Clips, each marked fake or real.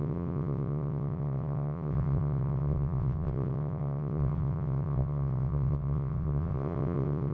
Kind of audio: fake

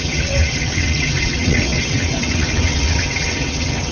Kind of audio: fake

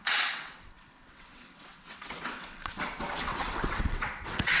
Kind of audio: fake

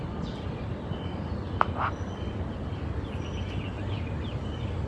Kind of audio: real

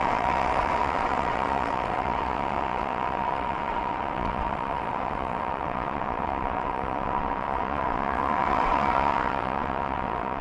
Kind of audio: fake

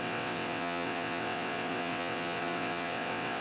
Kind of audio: fake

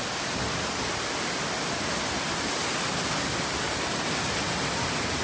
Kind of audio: real